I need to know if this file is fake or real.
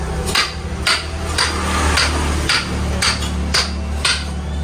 real